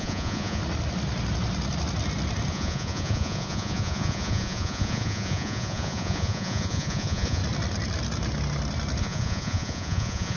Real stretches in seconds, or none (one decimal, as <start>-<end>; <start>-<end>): 0.6-2.5; 7.4-9.0